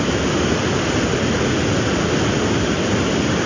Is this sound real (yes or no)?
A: yes